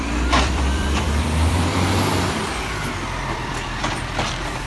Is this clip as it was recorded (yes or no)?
no